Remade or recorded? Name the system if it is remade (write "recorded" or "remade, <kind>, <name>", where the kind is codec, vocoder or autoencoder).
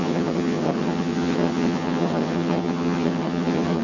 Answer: remade, vocoder, HiFi-GAN